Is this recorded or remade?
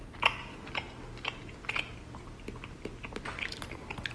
recorded